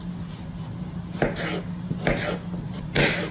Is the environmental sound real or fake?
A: real